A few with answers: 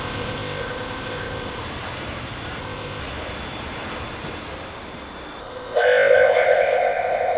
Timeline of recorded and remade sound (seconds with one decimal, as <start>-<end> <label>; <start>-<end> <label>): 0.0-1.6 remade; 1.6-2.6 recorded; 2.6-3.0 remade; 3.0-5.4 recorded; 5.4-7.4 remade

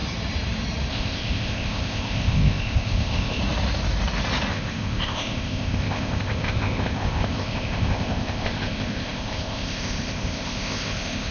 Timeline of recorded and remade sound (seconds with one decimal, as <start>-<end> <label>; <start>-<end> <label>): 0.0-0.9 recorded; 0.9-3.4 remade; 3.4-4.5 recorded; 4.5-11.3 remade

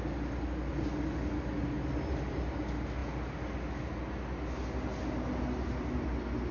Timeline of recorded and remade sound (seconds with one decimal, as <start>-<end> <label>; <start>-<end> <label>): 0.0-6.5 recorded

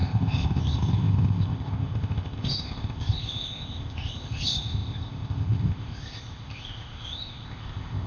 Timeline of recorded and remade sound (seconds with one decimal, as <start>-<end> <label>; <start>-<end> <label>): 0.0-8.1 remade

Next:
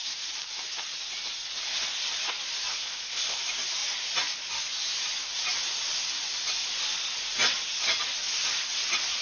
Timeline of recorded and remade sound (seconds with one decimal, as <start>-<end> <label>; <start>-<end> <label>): 0.0-2.7 recorded; 2.7-3.4 remade; 3.4-9.2 recorded